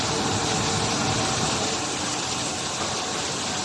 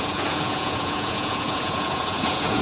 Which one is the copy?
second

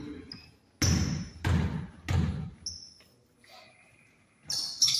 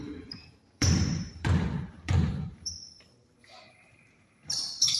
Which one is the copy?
second